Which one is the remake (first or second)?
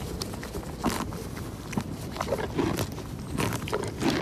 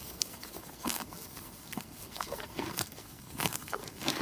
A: second